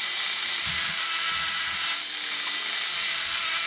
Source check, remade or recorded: remade